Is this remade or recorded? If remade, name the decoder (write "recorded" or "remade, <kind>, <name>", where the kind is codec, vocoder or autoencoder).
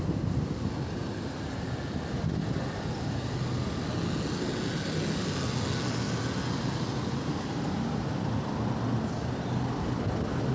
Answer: recorded